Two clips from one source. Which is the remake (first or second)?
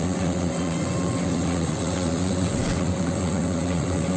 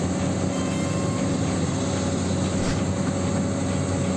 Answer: first